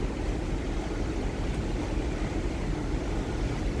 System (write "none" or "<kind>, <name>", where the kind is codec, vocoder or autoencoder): none